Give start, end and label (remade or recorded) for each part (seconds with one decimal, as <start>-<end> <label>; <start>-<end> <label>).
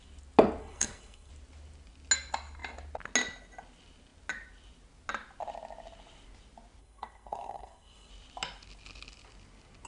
0.0-0.6 recorded; 0.6-1.3 remade; 1.3-6.8 recorded; 6.8-8.1 remade; 8.1-9.9 recorded